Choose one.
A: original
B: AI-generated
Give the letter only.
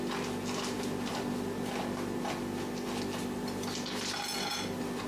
A